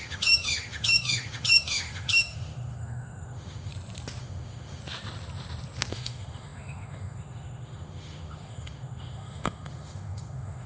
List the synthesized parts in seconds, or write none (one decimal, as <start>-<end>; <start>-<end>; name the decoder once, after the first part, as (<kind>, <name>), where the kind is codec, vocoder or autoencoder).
0.0-3.7 (autoencoder, DAC-VAE); 4.2-4.8; 5.9-10.7